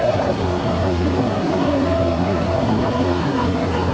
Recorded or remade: remade